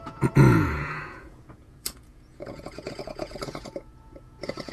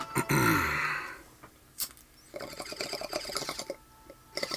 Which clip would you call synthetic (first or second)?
first